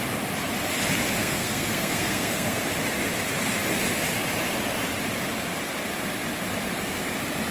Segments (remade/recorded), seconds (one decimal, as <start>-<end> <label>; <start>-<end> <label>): 0.0-1.2 recorded; 1.2-2.6 remade; 2.6-7.5 recorded